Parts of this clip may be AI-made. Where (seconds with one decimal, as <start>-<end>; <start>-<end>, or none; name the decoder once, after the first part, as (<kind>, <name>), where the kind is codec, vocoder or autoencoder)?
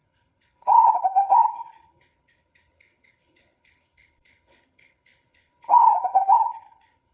0.0-7.1 (codec, HILCodec)